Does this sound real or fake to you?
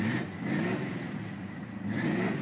fake